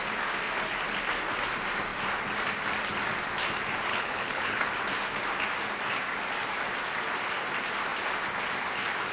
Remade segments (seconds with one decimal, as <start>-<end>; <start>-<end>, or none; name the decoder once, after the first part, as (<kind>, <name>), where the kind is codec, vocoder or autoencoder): 3.9-4.7 (codec, HILCodec)